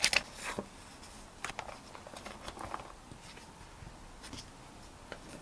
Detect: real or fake real